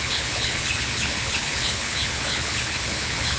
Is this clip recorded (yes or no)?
no